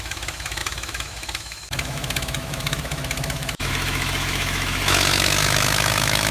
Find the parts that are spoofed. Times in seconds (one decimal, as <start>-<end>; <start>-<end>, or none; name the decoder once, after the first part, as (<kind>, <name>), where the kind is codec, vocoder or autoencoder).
0.0-6.3 (autoencoder, DAC-VAE)